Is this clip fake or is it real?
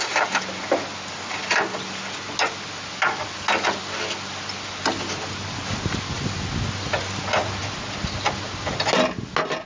real